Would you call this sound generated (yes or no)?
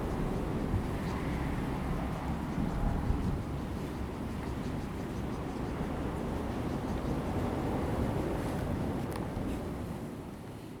no